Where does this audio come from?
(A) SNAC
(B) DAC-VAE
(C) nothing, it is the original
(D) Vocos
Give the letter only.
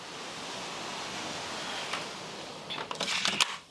C